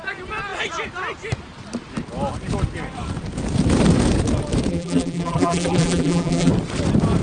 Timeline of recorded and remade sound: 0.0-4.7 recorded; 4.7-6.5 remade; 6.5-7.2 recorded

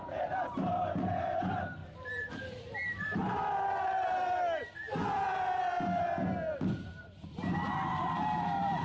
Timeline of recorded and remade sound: 0.0-3.4 remade; 3.4-7.0 recorded; 7.0-8.8 remade

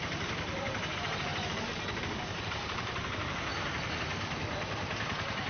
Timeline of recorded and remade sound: 0.0-1.3 remade; 1.3-2.0 recorded; 2.0-5.5 remade

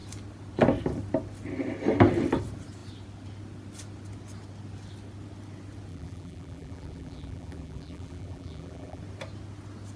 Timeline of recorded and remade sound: 0.0-5.9 recorded; 5.9-9.0 remade; 9.0-10.0 recorded

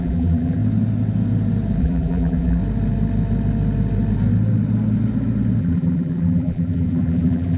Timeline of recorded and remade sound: 0.0-0.6 remade; 0.6-1.8 recorded; 1.8-2.6 remade; 2.6-5.6 recorded; 5.6-7.6 remade